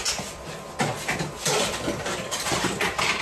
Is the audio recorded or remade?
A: recorded